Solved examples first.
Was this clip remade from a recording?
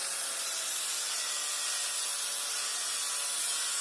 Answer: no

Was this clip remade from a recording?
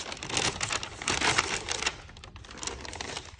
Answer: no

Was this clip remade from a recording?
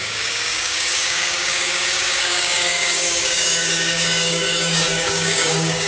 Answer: yes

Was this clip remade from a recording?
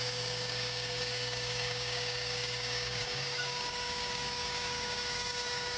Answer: yes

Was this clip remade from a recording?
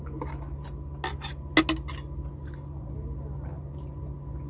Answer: no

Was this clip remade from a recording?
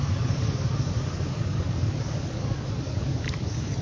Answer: yes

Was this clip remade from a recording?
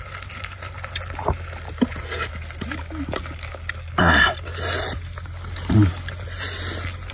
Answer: no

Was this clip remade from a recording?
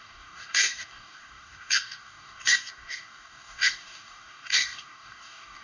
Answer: yes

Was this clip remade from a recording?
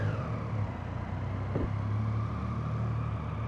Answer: no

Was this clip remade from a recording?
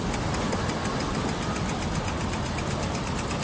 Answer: no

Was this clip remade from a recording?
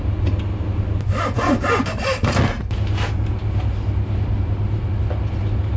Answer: no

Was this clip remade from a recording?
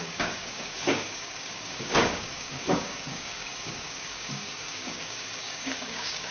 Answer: yes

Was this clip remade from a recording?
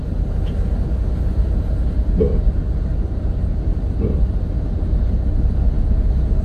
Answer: no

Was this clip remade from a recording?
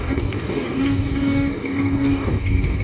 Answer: yes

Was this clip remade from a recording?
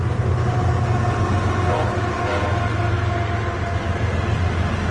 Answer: no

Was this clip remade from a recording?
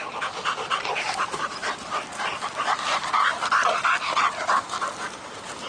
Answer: no